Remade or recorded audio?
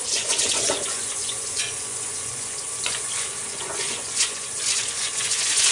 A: remade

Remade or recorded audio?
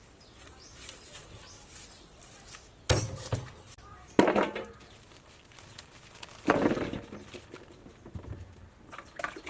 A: recorded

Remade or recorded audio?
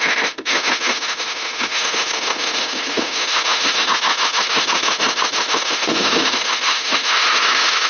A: remade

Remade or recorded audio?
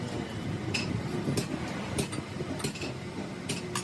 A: recorded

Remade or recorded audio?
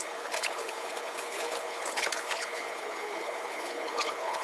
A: remade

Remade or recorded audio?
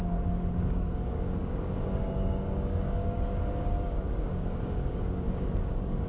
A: remade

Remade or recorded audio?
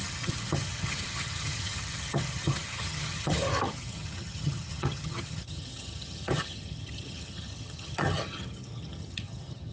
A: remade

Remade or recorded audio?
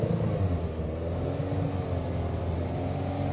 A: recorded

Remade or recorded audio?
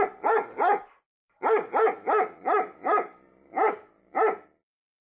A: recorded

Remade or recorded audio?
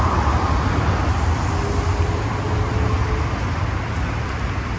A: recorded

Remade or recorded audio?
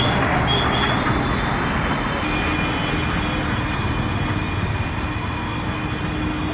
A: recorded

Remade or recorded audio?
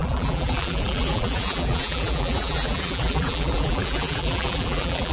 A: remade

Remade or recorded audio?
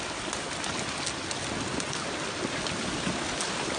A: recorded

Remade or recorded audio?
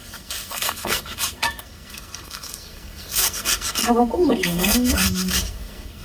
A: remade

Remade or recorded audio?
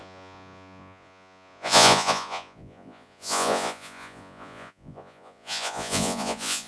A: remade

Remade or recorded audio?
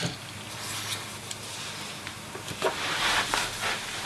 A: recorded